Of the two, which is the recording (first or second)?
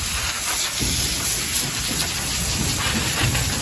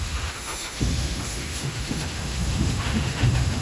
first